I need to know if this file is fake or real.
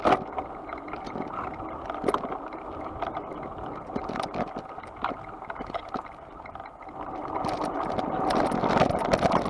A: real